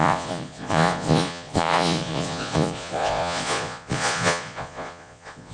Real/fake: fake